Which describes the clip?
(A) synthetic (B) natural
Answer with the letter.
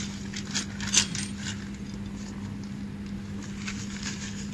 B